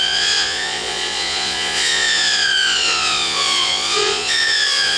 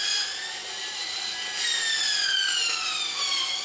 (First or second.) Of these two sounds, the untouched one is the second